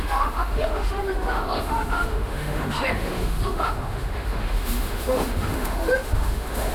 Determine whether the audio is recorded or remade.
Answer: remade